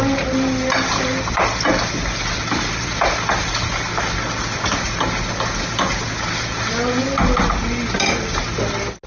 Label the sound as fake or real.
real